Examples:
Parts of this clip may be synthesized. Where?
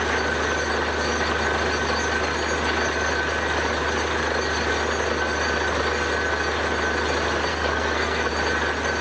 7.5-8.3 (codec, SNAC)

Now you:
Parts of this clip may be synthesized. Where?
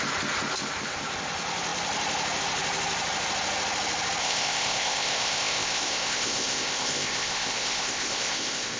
4.2-8.8 (codec, ZipCodec)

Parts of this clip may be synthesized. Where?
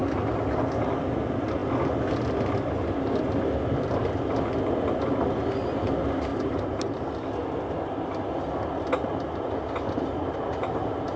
6.3-7.1 (vocoder, BigVGAN v2)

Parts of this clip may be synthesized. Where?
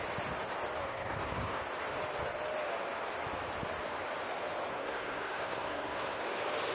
0.8-1.6 (codec, SNAC); 4.7-6.2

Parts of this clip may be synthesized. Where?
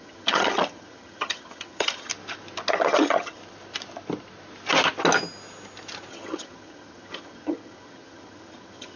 0.0-2.1 (vocoder, HiFi-GAN); 2.7-3.4; 6.1-9.0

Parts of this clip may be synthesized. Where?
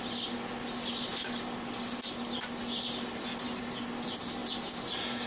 none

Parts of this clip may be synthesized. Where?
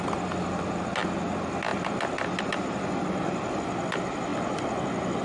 none